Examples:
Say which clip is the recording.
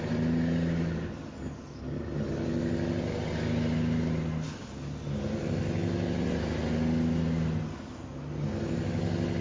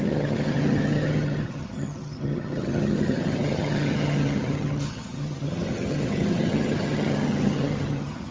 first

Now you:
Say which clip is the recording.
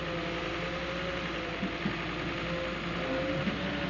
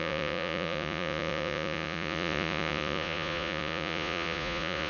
first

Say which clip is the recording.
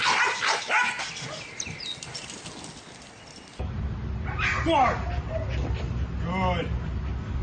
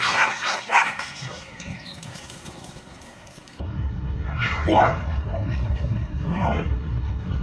first